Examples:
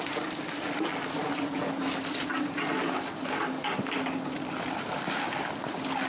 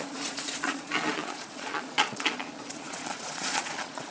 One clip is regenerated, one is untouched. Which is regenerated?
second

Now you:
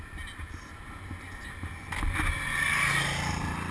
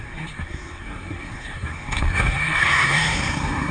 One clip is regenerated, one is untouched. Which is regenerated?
second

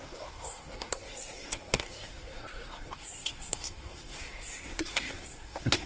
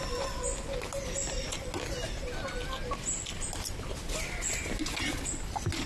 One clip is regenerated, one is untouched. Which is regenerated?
first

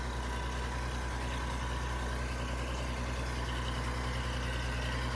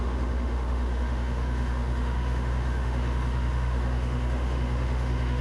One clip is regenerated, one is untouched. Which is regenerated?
second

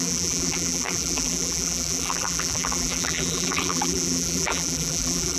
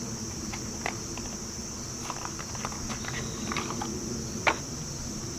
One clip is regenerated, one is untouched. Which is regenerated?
first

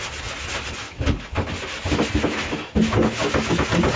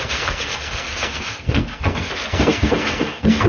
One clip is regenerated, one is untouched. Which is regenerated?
second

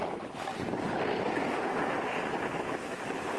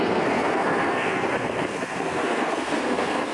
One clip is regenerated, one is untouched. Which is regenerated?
second